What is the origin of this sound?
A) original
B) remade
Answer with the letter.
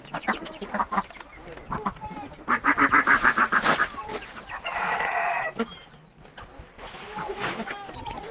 A